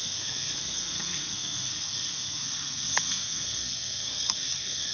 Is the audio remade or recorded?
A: remade